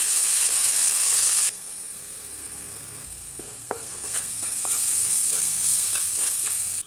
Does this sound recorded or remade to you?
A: remade